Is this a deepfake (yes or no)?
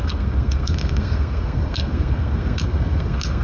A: yes